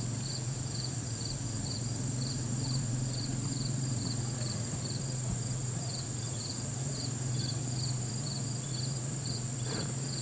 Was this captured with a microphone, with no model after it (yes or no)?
no